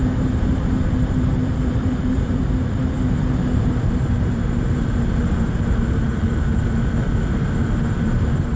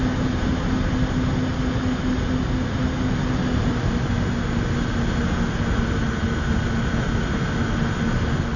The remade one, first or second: first